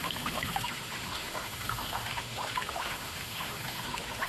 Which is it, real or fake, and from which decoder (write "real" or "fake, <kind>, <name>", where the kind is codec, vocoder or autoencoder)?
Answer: fake, autoencoder, DAC-VAE